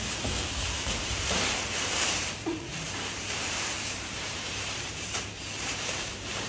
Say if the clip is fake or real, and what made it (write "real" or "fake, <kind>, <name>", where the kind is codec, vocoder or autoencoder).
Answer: fake, vocoder, BigVGAN v2